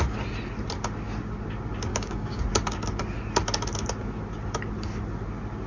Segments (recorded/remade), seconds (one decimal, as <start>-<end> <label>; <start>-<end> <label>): 0.0-1.9 recorded; 1.9-2.4 remade; 2.4-5.7 recorded